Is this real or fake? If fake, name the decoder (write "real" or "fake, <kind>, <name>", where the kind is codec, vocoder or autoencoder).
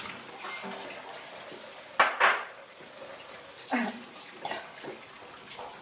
real